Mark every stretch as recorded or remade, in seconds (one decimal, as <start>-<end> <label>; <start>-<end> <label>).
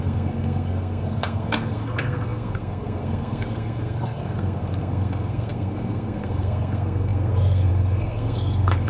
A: 0.0-8.9 remade